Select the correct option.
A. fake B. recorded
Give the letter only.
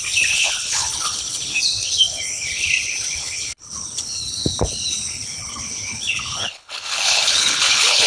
A